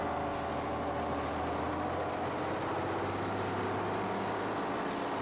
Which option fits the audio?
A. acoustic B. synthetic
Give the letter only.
A